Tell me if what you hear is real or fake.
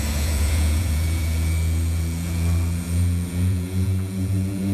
fake